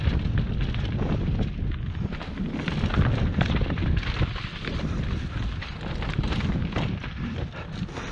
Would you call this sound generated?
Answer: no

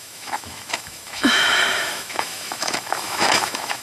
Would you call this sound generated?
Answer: yes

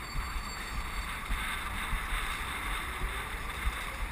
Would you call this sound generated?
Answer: yes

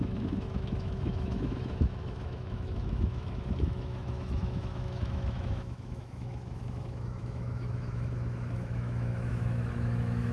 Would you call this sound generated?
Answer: yes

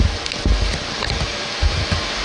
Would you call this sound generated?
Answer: no